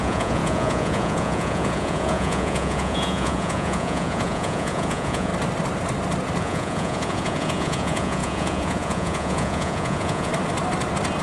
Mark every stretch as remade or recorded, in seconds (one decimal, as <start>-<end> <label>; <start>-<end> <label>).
0.0-5.3 remade; 5.3-6.4 recorded; 6.4-10.3 remade; 10.3-11.2 recorded